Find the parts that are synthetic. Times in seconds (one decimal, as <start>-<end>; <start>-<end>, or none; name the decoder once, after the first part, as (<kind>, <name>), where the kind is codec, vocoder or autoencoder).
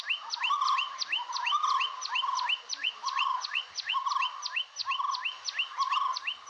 2.8-3.9 (vocoder, Vocos)